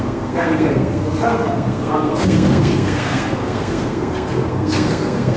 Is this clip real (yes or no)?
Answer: no